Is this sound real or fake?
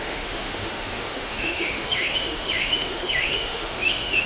fake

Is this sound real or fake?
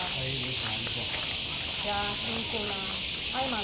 real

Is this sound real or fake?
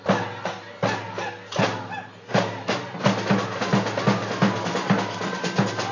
real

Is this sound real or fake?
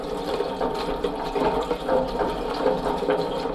fake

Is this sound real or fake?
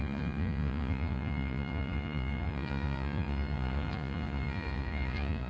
fake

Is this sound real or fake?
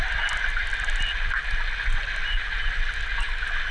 fake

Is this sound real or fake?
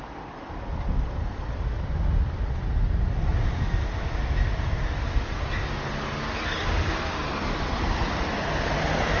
real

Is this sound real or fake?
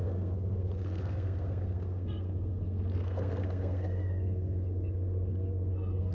fake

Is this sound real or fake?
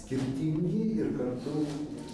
real